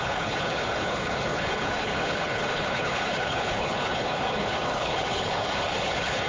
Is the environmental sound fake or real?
fake